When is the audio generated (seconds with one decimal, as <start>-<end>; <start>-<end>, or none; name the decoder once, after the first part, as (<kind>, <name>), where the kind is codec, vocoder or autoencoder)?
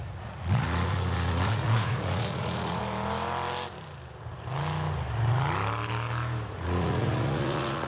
0.0-2.8 (vocoder, Vocos); 6.6-7.9